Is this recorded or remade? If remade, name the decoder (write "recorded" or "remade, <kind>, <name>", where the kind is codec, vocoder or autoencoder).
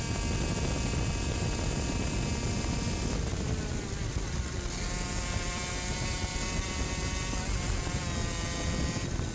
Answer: recorded